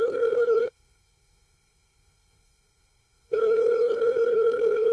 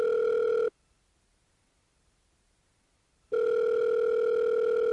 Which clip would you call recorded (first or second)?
second